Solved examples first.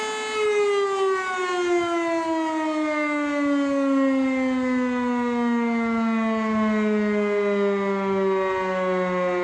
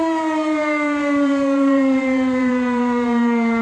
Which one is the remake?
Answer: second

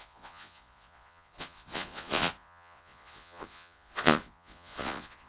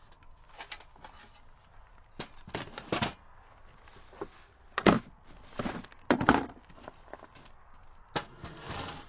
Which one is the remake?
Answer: first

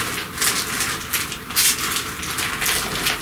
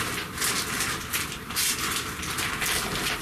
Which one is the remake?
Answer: second